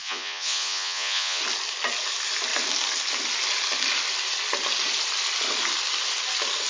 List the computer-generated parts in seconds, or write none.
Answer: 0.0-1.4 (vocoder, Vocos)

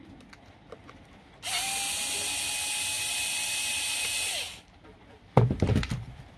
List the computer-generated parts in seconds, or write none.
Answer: 2.9-6.4 (vocoder, BigVGAN v2)

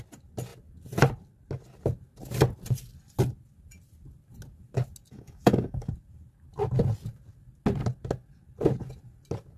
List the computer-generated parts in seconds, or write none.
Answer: 5.1-5.9 (codec, DAC)

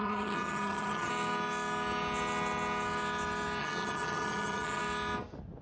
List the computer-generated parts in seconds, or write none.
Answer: 0.0-1.1 (vocoder, HiFi-GAN); 3.6-4.8

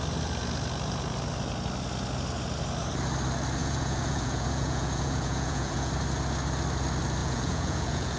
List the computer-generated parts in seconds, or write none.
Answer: 3.6-5.9 (vocoder, Vocos); 7.2-8.2

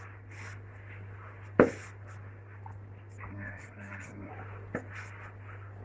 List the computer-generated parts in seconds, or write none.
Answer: 3.3-4.3 (codec, SNAC)

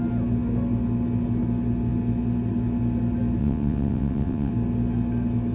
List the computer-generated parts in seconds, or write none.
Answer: 3.4-4.5 (vocoder, WaveNeXt)

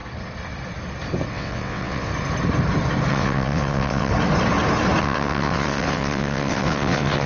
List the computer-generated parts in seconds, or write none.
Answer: 1.3-2.1 (vocoder, WaveNeXt); 3.1-4.1; 5.0-7.3